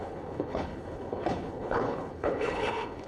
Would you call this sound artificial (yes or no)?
yes